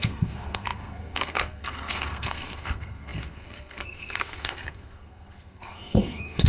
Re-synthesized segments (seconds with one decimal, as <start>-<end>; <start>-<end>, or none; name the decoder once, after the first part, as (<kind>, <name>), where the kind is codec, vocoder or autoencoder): 0.0-6.5 (codec, SNAC)